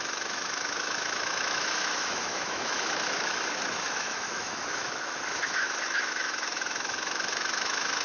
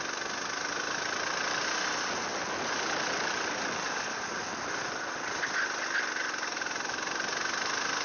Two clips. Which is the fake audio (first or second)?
first